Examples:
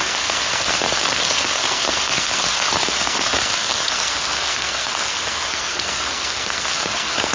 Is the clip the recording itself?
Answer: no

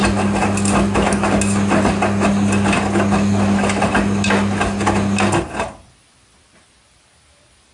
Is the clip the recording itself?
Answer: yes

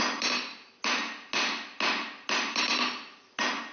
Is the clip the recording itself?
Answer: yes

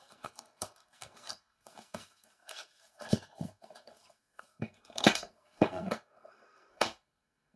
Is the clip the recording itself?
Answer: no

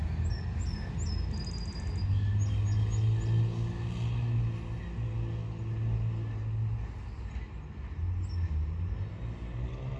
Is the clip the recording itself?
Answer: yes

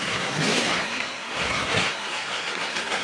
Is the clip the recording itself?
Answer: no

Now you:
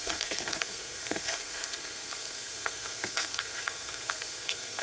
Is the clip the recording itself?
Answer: no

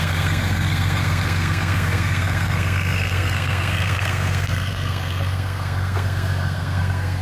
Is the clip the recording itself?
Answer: no